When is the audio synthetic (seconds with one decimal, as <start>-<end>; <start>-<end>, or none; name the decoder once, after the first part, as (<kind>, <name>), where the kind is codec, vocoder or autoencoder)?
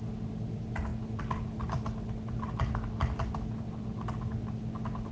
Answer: none